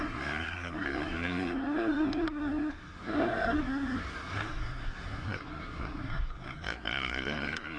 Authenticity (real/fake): fake